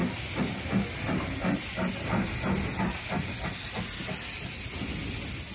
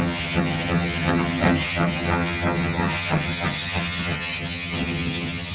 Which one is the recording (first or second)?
first